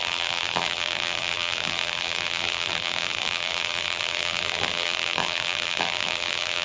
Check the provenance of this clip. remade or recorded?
remade